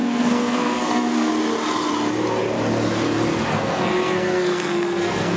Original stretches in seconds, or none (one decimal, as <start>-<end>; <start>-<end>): 1.3-3.5